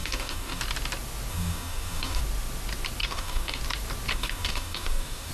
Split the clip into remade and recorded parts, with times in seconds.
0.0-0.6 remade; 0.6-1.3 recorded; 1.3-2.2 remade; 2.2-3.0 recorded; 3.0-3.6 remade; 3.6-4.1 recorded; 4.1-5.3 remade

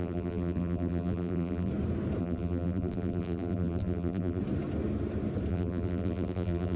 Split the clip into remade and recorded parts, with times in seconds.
0.0-1.7 remade; 1.7-2.2 recorded; 2.2-4.4 remade; 4.4-5.5 recorded; 5.5-6.8 remade